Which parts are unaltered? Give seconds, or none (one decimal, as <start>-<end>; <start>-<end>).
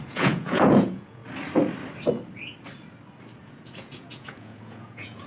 1.2-3.4